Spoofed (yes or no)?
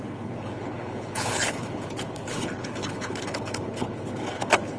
yes